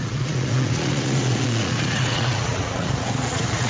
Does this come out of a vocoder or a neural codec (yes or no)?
yes